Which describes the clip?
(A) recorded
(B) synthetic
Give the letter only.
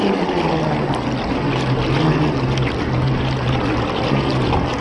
A